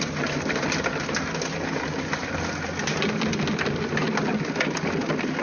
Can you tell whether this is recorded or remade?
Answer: recorded